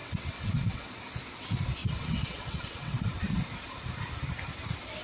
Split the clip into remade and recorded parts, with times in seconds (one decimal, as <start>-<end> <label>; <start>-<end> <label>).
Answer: 0.0-0.9 remade; 0.9-1.8 recorded; 1.8-3.1 remade; 3.1-5.0 recorded